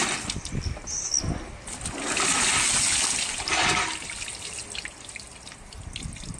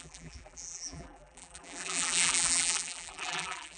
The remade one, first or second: second